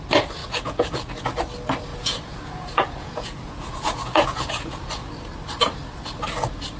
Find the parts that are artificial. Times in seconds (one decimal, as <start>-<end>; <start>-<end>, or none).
0.4-1.1; 1.9-4.9